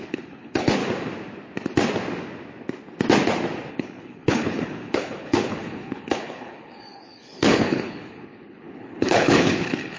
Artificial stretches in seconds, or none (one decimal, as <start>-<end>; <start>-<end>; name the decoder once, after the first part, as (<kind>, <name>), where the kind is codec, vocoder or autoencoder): 0.0-0.8 (codec, HILCodec); 3.7-10.0

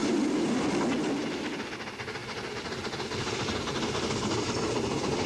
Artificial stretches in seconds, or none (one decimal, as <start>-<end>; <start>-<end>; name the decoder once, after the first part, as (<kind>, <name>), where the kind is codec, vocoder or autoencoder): none

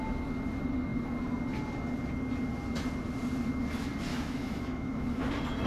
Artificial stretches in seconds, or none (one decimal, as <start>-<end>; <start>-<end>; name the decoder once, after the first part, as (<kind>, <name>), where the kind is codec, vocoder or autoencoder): 4.1-5.3 (autoencoder, DAC-VAE)

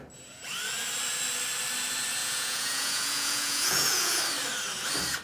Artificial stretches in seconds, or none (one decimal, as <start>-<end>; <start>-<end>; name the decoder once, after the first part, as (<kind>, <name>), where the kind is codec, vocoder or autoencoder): 2.2-4.2 (vocoder, Vocos)

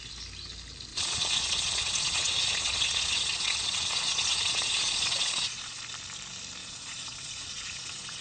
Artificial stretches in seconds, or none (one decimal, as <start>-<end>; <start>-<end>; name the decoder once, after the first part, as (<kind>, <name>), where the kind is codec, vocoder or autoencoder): 0.9-5.8 (vocoder, Vocos); 6.6-8.2

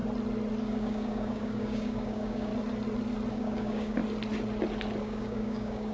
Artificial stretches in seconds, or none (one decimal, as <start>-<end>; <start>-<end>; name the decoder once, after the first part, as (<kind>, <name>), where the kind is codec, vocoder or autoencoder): 0.6-2.5 (codec, DAC); 3.3-4.0; 5.0-5.9

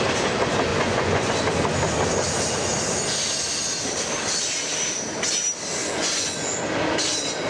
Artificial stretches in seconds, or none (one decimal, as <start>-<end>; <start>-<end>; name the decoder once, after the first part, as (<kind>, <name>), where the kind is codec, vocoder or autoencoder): 0.7-1.3 (vocoder, Vocos); 5.8-6.6